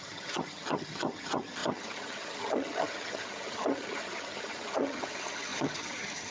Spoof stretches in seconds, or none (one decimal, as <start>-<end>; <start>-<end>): 0.0-6.3